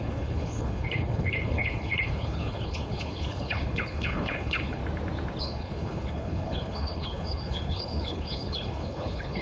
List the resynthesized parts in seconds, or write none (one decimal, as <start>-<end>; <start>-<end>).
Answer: 0.0-4.8; 5.4-9.4